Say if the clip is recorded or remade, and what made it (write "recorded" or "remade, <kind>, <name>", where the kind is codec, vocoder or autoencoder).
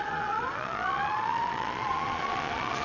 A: remade, vocoder, Vocos